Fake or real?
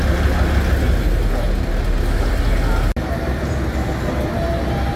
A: real